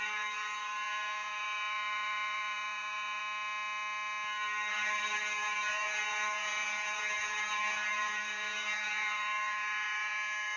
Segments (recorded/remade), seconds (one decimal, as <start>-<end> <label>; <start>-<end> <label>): 0.0-3.2 remade; 3.2-4.7 recorded; 4.7-10.6 remade